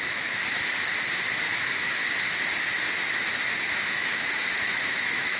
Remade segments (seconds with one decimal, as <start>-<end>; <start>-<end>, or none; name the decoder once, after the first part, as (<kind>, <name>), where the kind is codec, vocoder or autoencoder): 0.0-0.4 (autoencoder, DAC-VAE); 1.3-2.0; 3.6-5.4